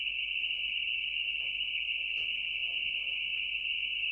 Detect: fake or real real